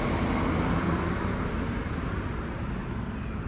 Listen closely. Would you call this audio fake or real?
real